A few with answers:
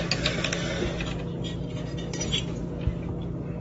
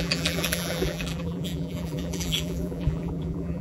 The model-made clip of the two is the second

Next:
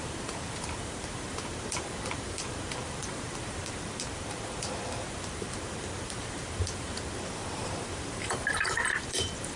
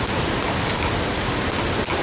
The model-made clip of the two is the first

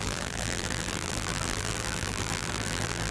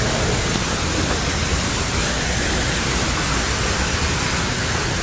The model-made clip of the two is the first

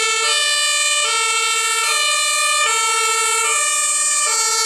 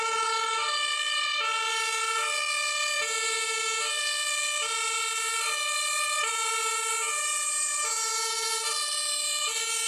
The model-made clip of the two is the second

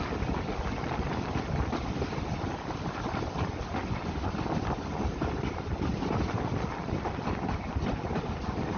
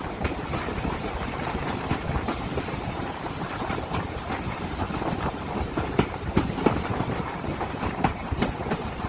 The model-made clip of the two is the second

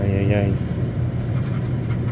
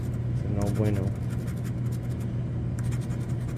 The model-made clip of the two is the first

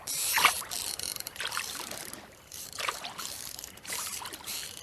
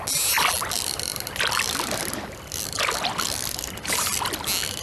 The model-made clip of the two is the first